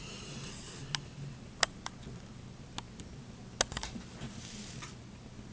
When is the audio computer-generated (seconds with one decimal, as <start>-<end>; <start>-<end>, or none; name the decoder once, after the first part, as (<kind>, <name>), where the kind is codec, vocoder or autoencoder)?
none